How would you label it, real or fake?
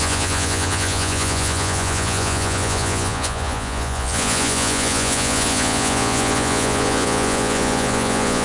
fake